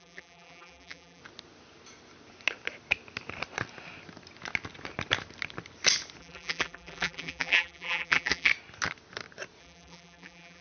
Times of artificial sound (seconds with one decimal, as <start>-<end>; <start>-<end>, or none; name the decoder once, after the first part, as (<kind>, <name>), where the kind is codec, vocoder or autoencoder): 0.0-1.2 (vocoder, BigVGAN v2); 6.2-8.5; 9.6-10.6